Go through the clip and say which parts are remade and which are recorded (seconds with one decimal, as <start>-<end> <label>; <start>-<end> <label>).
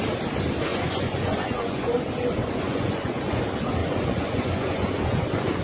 0.0-0.7 recorded; 0.7-2.0 remade; 2.0-2.4 recorded; 2.4-3.4 remade; 3.4-3.8 recorded; 3.8-5.6 remade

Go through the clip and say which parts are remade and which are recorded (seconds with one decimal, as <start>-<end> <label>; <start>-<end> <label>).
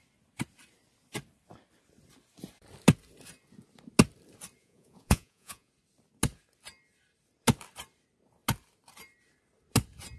0.0-4.6 recorded; 4.6-5.7 remade; 5.7-10.2 recorded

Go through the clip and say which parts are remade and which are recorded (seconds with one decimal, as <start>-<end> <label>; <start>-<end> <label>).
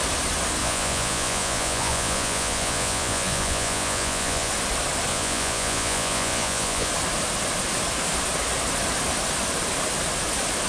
0.0-0.6 recorded; 0.6-4.5 remade; 4.5-5.1 recorded; 5.1-6.9 remade; 6.9-10.7 recorded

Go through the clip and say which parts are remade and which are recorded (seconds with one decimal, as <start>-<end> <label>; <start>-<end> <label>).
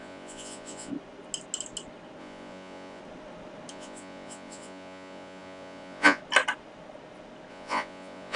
0.0-0.9 remade; 0.9-2.2 recorded; 2.2-3.0 remade; 3.0-3.7 recorded; 3.7-6.2 remade; 6.2-7.5 recorded; 7.5-8.4 remade